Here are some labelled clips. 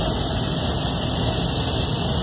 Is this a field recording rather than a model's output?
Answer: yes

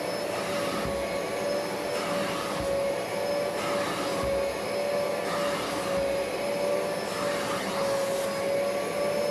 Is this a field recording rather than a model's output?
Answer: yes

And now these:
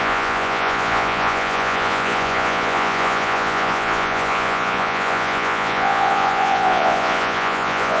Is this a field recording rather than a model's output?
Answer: no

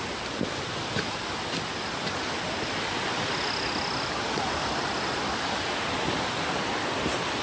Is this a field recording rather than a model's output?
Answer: yes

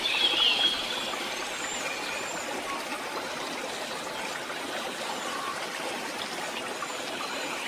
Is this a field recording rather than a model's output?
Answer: yes